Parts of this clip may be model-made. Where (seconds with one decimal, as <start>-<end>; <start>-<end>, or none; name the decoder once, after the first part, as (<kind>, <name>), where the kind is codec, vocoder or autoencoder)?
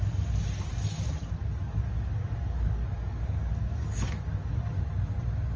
1.4-4.8 (codec, DAC)